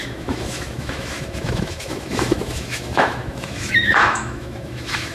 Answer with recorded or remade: remade